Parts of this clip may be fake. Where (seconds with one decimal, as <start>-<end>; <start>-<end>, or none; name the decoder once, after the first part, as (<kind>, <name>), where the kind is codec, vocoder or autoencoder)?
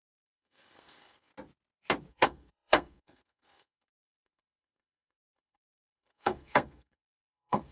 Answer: 0.0-1.3 (codec, SNAC); 2.1-7.7